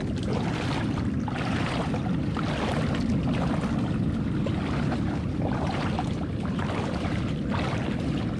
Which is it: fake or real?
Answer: real